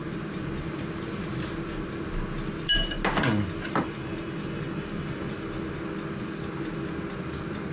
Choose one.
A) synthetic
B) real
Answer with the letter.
B